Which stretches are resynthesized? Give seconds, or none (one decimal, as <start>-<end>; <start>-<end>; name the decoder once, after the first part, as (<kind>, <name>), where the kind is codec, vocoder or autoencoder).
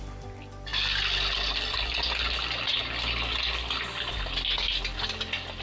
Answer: none